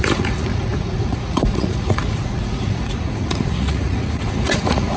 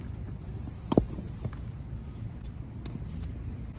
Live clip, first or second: second